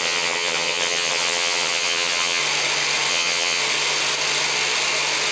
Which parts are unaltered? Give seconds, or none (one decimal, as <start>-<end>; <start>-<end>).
2.4-3.1; 3.6-5.3